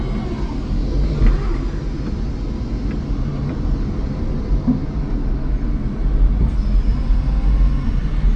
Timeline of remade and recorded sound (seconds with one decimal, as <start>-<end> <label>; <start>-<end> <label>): 0.0-8.4 recorded